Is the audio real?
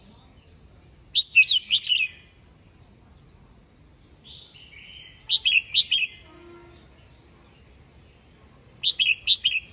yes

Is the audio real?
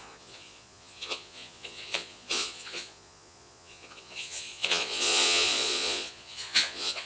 no